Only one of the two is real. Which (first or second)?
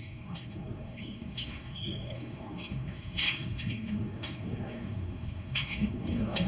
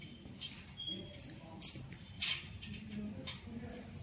second